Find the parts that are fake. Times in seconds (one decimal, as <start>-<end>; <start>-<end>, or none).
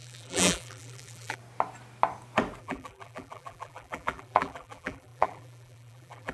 0.0-1.4; 2.6-6.3